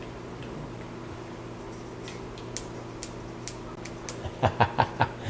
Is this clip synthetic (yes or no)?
no